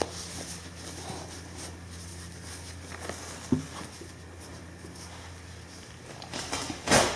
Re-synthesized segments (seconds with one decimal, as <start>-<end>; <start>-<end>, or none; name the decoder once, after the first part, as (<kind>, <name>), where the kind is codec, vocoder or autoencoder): none